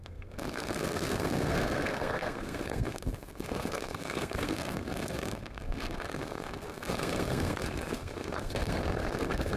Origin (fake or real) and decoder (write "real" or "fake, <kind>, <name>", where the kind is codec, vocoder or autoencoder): fake, codec, SNAC